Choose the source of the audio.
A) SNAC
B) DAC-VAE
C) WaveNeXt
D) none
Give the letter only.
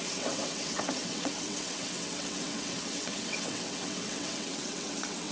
C